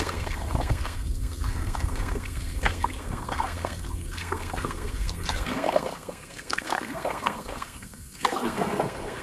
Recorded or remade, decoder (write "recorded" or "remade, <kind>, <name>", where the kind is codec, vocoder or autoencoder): remade, codec, SNAC